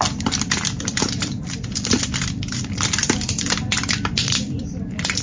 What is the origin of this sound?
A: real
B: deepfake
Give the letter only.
B